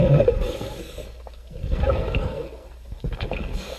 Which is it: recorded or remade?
remade